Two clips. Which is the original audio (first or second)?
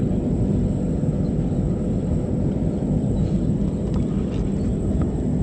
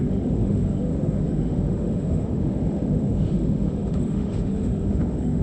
first